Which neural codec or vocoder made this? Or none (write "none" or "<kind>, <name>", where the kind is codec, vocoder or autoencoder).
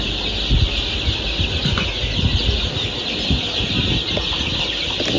none